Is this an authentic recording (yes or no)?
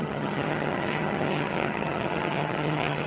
no